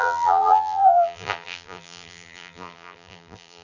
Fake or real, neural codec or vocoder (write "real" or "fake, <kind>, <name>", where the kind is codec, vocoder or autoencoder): fake, vocoder, BigVGAN v2